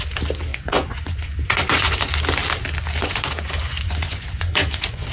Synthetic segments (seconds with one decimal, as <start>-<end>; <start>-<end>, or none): 0.5-2.1; 3.0-5.1